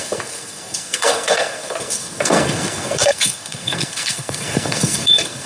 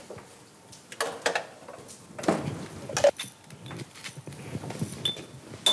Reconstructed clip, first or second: first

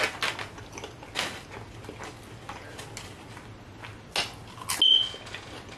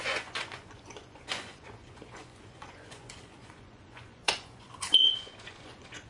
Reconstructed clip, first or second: second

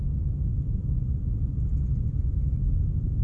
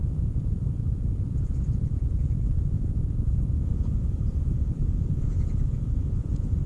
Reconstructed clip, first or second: second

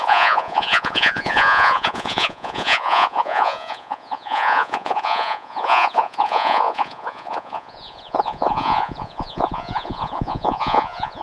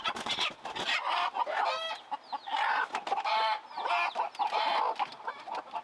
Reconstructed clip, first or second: first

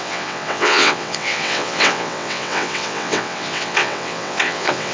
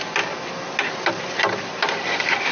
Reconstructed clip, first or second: first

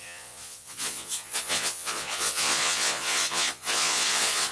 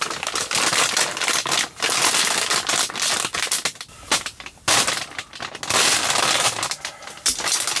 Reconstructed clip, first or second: first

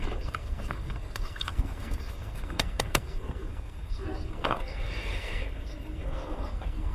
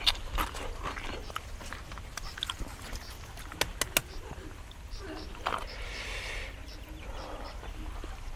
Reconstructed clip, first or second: first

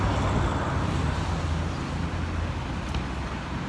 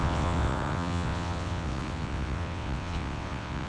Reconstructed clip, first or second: second